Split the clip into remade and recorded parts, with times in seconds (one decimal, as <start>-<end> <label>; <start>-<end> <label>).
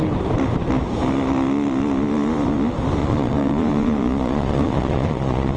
0.0-3.0 recorded; 3.0-5.6 remade